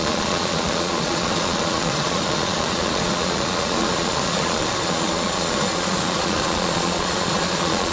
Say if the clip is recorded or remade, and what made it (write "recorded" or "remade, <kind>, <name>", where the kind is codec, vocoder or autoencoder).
remade, vocoder, Vocos